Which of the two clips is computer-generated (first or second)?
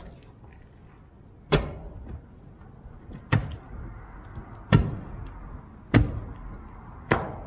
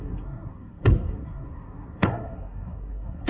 second